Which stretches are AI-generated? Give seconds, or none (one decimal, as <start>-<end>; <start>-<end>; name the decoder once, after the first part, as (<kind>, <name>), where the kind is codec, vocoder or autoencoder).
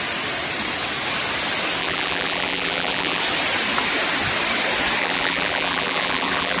1.8-3.2 (vocoder, BigVGAN v2); 5.0-6.6